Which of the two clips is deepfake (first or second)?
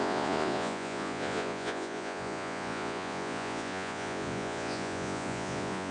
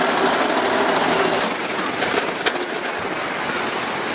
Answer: first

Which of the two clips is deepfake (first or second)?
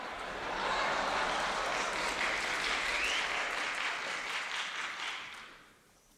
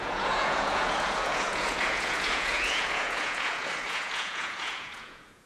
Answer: second